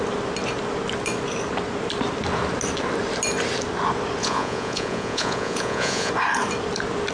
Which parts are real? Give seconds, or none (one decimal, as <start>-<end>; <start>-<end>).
0.0-4.2; 6.1-7.1